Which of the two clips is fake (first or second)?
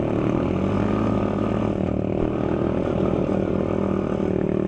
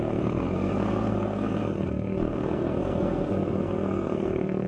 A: second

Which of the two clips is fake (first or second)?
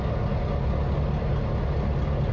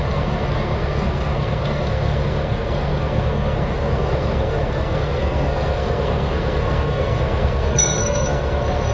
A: second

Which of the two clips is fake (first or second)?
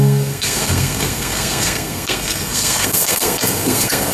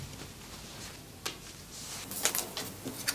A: first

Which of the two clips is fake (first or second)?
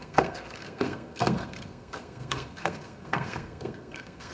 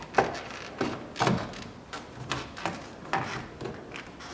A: first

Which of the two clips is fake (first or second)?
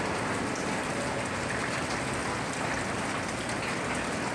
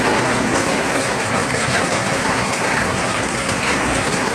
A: second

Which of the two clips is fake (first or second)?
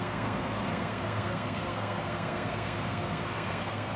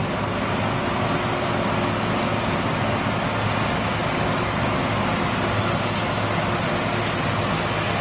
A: first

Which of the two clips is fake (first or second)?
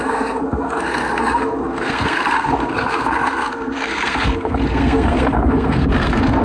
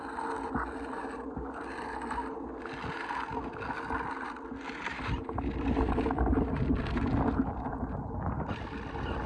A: first